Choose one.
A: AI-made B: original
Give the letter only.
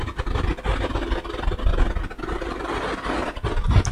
B